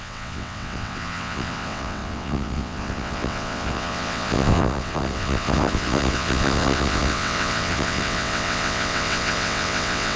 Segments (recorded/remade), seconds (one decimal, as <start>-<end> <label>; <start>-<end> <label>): 0.0-10.2 remade

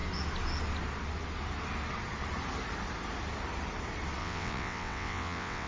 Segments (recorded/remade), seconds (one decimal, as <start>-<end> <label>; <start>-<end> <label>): 0.0-4.2 recorded; 4.2-5.7 remade

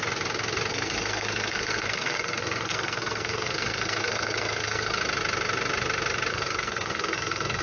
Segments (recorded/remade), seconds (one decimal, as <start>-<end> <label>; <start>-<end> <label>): 0.0-0.7 recorded; 0.7-5.0 remade; 5.0-6.3 recorded; 6.3-7.6 remade

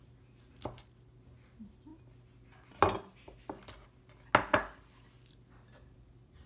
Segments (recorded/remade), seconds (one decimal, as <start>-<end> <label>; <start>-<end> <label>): 0.0-6.5 recorded

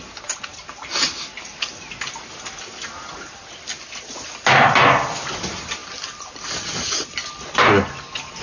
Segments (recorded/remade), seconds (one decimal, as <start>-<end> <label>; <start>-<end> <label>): 0.0-8.4 recorded

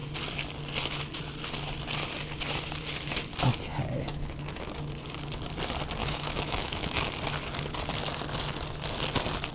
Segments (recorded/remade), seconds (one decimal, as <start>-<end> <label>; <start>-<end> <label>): 0.0-4.1 recorded; 4.1-4.7 remade; 4.7-6.0 recorded; 6.0-7.1 remade; 7.1-9.5 recorded

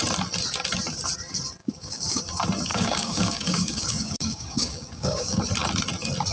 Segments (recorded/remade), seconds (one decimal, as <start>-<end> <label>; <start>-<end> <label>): 0.0-1.6 recorded; 1.6-2.2 remade; 2.2-2.7 recorded; 2.7-5.4 remade; 5.4-6.3 recorded

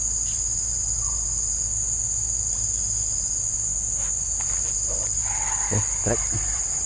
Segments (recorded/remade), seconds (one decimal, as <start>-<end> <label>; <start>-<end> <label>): 0.0-6.9 recorded